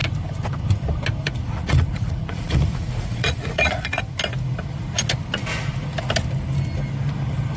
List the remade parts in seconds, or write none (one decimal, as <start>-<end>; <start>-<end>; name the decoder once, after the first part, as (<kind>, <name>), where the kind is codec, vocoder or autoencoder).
1.4-4.0 (vocoder, Vocos)